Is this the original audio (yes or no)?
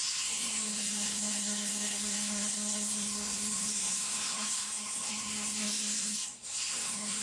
no